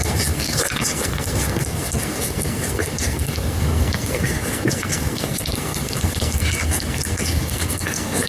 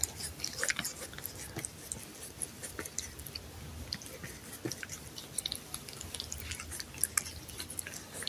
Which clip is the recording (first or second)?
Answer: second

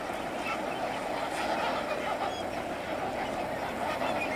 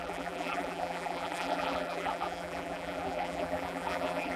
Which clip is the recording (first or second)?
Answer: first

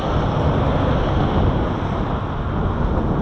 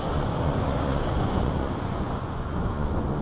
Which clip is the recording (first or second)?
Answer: first